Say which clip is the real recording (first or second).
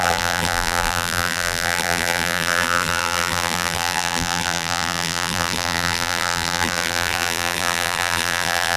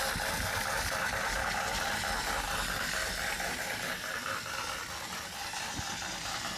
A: second